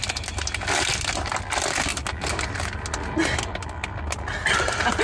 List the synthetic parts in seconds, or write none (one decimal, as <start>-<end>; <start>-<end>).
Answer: none